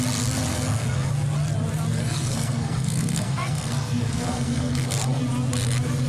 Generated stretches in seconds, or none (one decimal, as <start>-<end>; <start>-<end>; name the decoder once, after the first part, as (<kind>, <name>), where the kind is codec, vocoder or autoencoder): 0.5-1.1 (codec, SNAC); 2.0-5.2